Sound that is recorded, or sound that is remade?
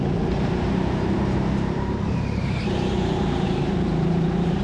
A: remade